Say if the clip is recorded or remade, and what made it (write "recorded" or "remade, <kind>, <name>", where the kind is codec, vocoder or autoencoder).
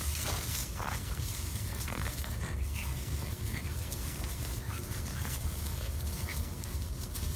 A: remade, codec, SNAC